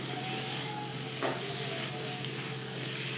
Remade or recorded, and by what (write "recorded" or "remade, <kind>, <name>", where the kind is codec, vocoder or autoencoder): remade, codec, DAC